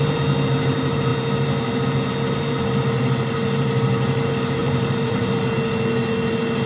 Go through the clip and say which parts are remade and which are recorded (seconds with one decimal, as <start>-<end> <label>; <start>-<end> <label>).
0.0-4.6 recorded; 4.6-5.4 remade; 5.4-6.7 recorded